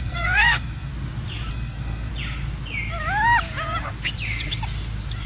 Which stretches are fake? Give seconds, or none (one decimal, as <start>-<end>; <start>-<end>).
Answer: 0.0-0.9; 1.5-2.1